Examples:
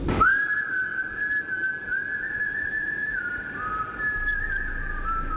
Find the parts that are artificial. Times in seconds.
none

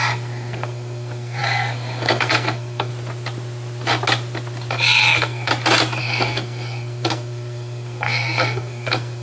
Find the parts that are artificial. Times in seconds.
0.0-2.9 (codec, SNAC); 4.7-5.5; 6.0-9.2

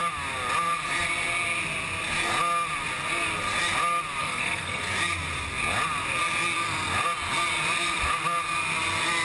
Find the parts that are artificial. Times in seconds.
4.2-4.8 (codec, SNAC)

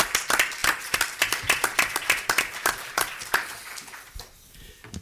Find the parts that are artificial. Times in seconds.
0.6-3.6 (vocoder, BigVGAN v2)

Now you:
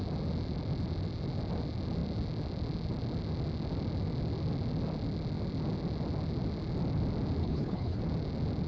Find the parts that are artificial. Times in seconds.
7.4-8.0 (codec, HILCodec)

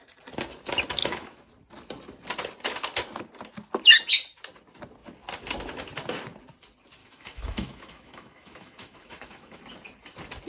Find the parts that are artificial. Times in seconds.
1.0-1.5 (autoencoder, DAC-VAE); 7.0-9.6

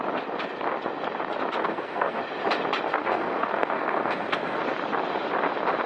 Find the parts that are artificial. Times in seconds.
1.6-2.2 (codec, SNAC); 2.9-4.6

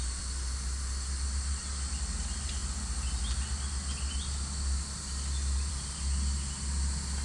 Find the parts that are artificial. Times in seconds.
none